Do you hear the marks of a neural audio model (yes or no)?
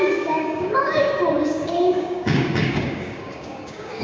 yes